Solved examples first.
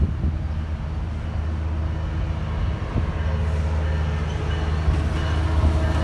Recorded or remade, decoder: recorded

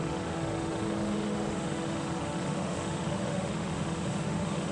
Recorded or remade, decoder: remade, autoencoder, DAC-VAE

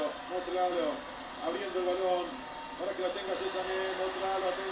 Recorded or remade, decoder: recorded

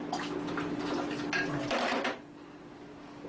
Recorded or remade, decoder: recorded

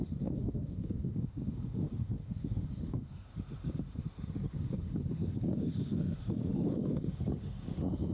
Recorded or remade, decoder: remade, autoencoder, DAC-VAE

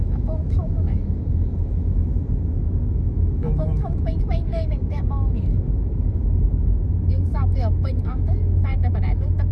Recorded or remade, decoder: remade, autoencoder, DAC-VAE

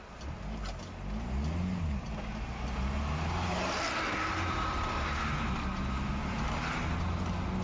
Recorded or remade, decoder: recorded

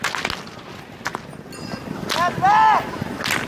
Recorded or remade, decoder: recorded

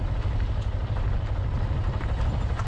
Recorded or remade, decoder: recorded